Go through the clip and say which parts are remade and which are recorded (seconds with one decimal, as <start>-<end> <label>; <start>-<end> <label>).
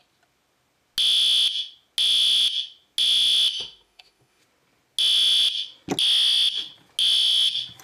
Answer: 0.0-3.5 recorded; 3.5-4.4 remade; 4.4-7.8 recorded